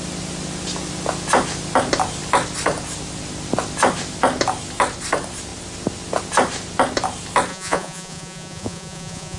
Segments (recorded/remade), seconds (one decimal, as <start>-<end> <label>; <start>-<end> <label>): 0.0-7.5 recorded; 7.5-9.4 remade